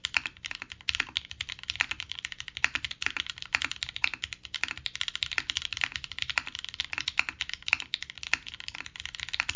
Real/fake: real